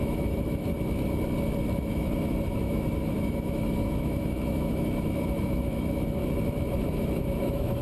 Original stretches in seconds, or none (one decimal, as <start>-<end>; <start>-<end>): 0.7-1.9; 6.2-6.8